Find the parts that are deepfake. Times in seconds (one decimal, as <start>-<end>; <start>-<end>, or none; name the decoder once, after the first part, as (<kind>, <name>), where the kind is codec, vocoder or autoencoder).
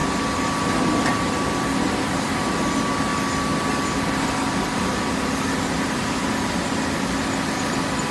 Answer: none